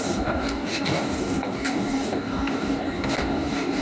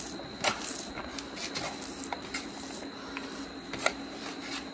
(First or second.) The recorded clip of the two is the second